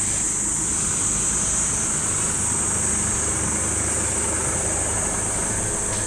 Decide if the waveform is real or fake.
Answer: real